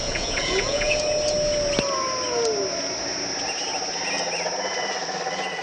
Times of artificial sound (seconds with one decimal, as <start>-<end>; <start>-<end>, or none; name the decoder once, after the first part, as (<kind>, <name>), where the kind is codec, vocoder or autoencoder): 0.0-0.9 (vocoder, Vocos)